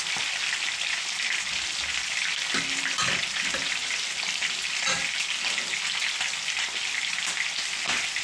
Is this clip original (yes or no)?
yes